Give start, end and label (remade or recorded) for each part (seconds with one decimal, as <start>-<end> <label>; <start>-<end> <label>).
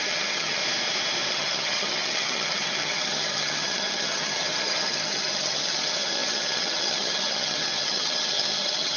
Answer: 0.0-0.6 remade; 0.6-1.3 recorded; 1.3-9.0 remade